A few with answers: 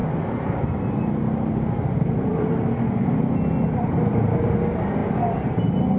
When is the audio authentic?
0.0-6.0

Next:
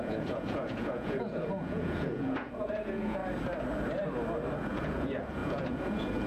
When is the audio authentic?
3.2-4.6